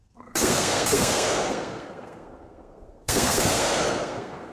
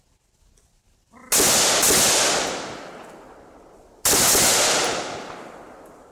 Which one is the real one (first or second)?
second